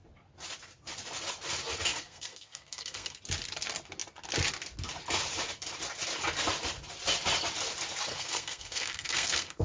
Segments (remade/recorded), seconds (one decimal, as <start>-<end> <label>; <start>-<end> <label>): 0.0-1.9 recorded; 1.9-3.2 remade; 3.2-8.1 recorded; 8.1-9.6 remade